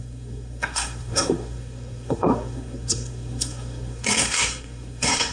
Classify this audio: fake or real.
fake